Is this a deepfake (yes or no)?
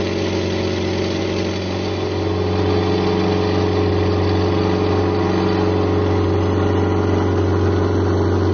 no